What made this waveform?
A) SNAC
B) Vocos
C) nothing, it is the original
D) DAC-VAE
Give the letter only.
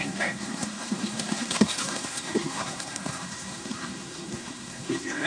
A